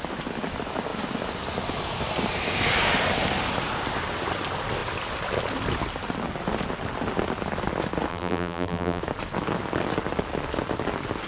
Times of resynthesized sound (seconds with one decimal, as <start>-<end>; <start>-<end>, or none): 8.1-9.0